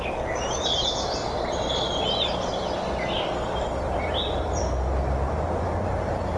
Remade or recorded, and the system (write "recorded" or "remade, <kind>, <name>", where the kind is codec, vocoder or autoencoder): recorded